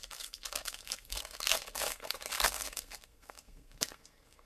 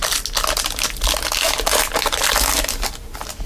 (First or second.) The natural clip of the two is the second